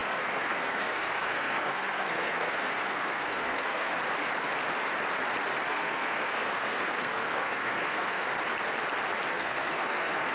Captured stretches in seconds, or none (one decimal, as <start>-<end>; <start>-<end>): 3.9-5.7; 8.3-9.3